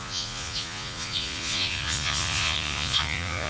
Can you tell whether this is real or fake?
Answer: fake